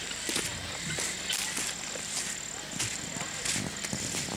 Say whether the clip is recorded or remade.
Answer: recorded